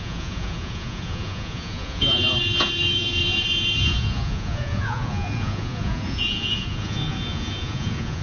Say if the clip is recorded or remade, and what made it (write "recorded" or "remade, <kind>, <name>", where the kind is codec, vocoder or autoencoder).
remade, vocoder, Vocos